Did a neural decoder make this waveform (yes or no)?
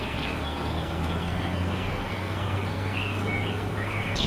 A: yes